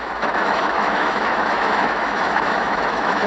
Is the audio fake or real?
fake